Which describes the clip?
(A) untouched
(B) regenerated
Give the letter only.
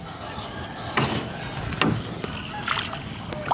A